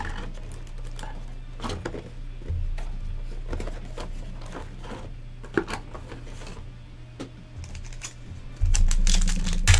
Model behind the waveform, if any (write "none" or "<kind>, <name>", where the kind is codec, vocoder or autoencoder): none